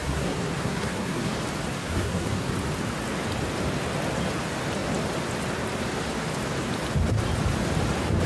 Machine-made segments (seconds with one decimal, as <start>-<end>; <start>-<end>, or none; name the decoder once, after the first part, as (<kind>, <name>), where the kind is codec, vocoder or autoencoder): 0.0-1.3 (codec, SNAC); 1.8-2.5